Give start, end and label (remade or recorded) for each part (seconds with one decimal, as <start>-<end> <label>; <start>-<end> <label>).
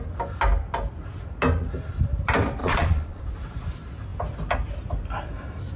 0.0-2.6 recorded; 2.6-3.2 remade; 3.2-5.8 recorded